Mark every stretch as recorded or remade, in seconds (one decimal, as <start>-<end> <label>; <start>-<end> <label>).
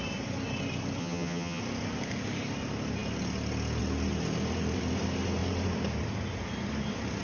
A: 0.0-1.0 recorded; 1.0-1.6 remade; 1.6-7.2 recorded